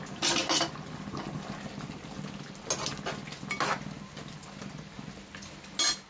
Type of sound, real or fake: real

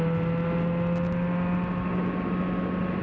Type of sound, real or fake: real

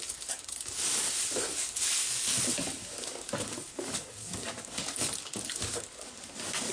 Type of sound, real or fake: fake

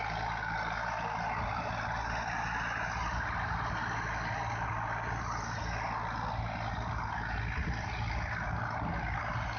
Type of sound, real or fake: real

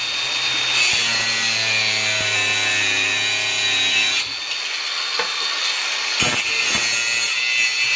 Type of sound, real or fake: real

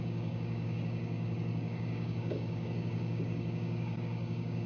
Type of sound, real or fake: fake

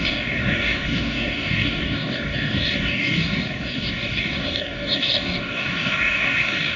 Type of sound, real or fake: fake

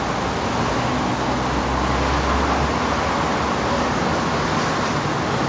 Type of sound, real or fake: real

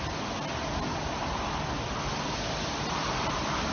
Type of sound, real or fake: real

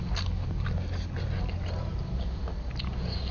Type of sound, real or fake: real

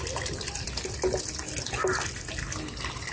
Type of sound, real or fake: real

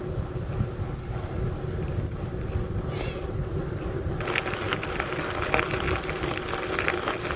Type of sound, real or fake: real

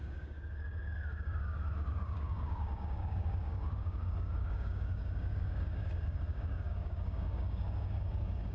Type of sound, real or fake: fake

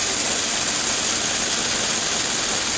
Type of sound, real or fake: real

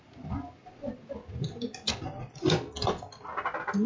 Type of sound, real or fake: real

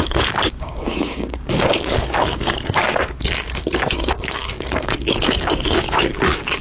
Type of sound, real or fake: fake